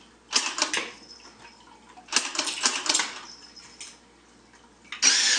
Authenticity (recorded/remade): recorded